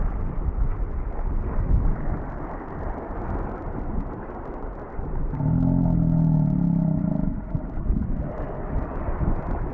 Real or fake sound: real